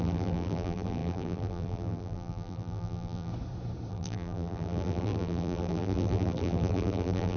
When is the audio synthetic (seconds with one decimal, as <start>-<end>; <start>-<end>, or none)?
0.0-3.3; 3.9-7.4